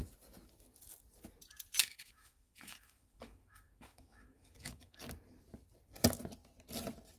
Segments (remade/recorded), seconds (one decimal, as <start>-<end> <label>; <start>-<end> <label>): 0.0-1.8 recorded; 1.8-5.0 remade; 5.0-7.2 recorded